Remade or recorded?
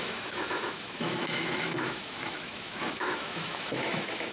remade